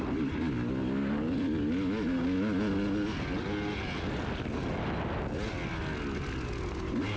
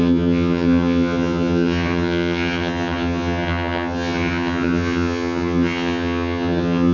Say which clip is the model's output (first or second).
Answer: second